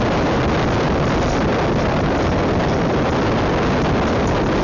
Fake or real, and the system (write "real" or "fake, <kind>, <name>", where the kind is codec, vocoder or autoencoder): real